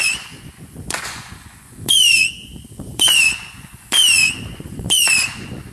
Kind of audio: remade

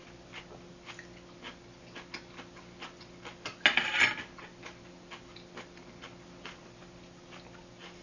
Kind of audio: recorded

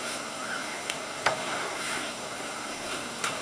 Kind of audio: remade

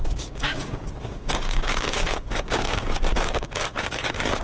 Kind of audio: remade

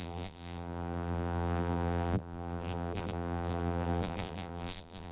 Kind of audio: remade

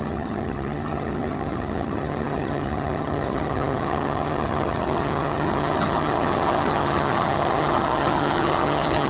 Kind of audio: remade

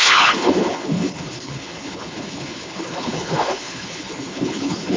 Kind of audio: remade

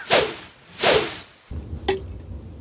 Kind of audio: recorded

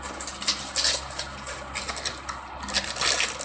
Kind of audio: recorded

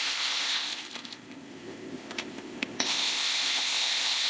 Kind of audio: remade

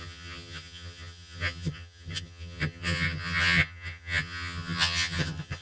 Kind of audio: remade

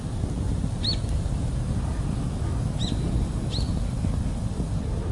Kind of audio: recorded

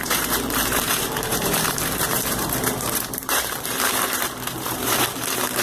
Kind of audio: remade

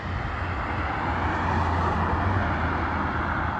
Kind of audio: recorded